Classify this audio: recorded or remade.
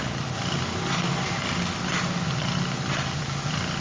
recorded